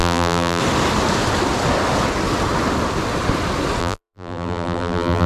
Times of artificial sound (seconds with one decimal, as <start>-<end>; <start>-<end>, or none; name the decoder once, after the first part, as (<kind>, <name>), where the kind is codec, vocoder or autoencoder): 0.0-0.6 (vocoder, BigVGAN v2); 3.8-5.3